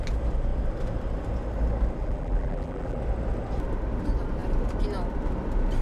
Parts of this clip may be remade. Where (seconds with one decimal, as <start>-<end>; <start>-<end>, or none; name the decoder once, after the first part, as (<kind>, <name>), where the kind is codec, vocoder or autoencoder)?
2.0-3.0 (vocoder, BigVGAN v2)